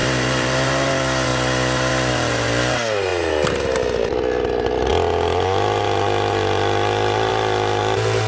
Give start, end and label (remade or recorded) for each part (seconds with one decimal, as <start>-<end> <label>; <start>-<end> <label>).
0.0-0.9 remade; 0.9-8.3 recorded